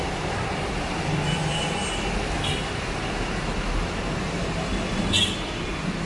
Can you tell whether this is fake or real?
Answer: real